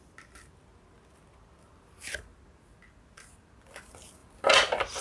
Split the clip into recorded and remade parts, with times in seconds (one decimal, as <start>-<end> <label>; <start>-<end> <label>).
0.0-5.0 recorded